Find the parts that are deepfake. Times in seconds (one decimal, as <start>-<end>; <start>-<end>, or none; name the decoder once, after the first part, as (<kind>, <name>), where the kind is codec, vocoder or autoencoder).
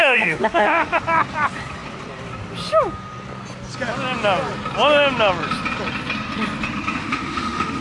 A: 0.0-1.0 (autoencoder, DAC-VAE); 7.0-7.8